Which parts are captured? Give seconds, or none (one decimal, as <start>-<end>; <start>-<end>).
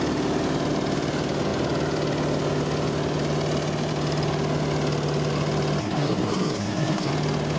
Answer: 0.0-5.8; 7.1-7.6